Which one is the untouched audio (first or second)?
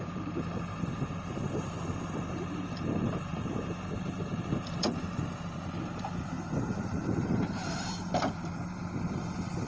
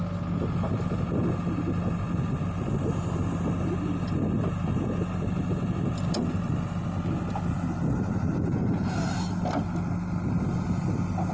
second